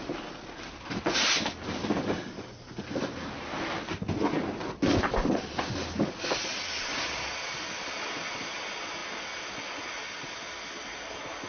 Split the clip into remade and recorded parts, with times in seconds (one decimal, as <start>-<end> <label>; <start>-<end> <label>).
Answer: 0.0-11.5 recorded